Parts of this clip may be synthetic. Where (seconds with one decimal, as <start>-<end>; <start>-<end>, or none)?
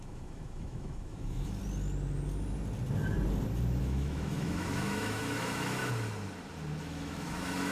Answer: 0.0-1.6; 3.8-5.8; 6.8-7.7